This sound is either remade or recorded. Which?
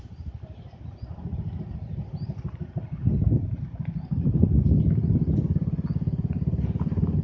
recorded